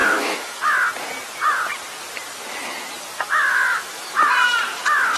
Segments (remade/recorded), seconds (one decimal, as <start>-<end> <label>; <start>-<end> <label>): 0.0-0.6 remade; 0.6-3.5 recorded; 3.5-4.2 remade; 4.2-5.2 recorded